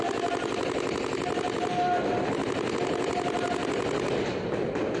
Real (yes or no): yes